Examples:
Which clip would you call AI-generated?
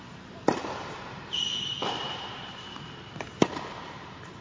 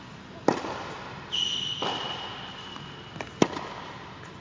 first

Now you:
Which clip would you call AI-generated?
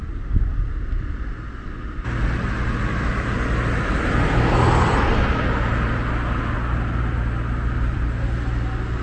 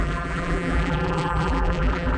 second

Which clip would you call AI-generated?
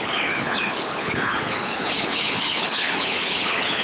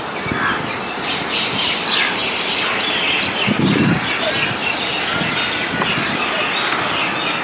first